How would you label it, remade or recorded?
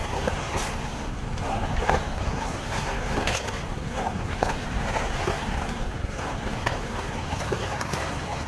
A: remade